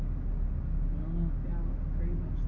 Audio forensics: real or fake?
real